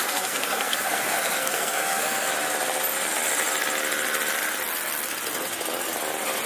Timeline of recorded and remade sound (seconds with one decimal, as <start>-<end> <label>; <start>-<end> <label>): 0.0-2.3 remade; 2.3-6.5 recorded